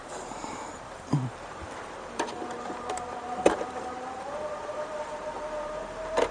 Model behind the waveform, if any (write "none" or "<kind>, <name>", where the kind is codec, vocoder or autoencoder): vocoder, BigVGAN v2